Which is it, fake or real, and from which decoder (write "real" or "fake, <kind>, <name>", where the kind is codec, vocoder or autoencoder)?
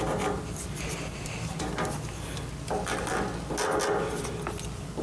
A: real